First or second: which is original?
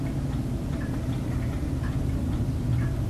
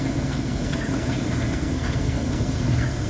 first